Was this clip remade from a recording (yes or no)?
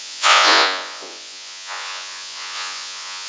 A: yes